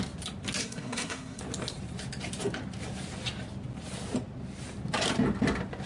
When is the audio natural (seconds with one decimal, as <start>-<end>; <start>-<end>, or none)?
0.0-0.6; 1.4-5.9